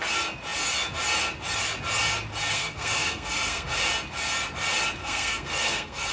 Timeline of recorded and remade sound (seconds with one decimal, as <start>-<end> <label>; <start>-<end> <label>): 0.0-2.5 recorded; 2.5-3.8 remade; 3.8-5.0 recorded; 5.0-6.1 remade